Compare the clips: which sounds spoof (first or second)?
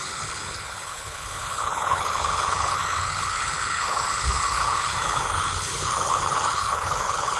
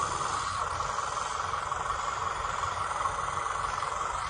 first